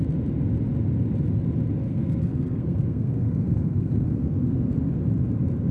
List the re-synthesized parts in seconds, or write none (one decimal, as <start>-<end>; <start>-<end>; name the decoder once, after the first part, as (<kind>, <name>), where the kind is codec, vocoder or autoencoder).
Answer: 1.9-4.6 (codec, SNAC)